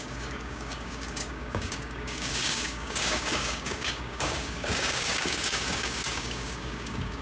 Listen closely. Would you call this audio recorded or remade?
remade